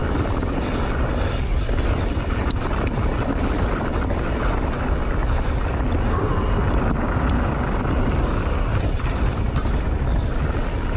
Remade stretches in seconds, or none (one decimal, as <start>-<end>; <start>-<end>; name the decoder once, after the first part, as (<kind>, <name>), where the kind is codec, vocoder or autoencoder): none